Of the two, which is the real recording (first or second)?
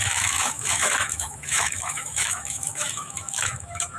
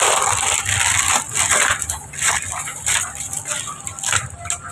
second